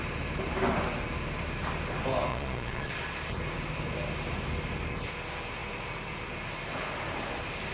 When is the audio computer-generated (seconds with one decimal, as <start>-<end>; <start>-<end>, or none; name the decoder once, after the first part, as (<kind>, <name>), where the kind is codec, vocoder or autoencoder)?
2.3-2.9 (vocoder, Vocos)